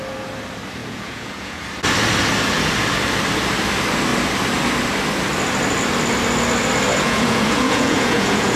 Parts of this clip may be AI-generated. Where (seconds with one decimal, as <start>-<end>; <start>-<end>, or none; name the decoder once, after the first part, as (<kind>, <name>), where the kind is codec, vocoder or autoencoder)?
0.8-1.6 (vocoder, Vocos); 6.9-8.6